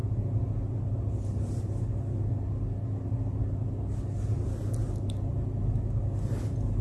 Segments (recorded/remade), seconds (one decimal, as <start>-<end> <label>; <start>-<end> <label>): 0.0-6.8 recorded